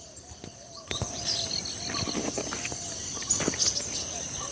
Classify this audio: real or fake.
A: real